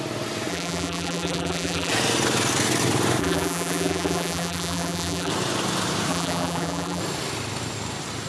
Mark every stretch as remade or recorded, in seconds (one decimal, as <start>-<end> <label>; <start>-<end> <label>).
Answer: 0.0-0.5 recorded; 0.5-1.9 remade; 1.9-3.2 recorded; 3.2-5.3 remade; 5.3-6.1 recorded; 6.1-7.0 remade; 7.0-8.3 recorded